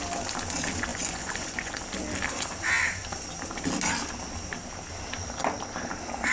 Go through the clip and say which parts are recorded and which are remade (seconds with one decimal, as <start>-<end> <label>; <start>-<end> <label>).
0.0-0.9 recorded; 0.9-1.8 remade; 1.8-6.3 recorded

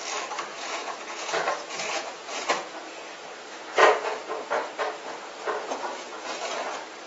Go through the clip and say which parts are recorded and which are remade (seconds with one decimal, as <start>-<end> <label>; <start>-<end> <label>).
0.0-0.5 recorded; 0.5-3.1 remade; 3.1-3.8 recorded; 3.8-4.4 remade; 4.4-5.6 recorded; 5.6-6.3 remade; 6.3-7.1 recorded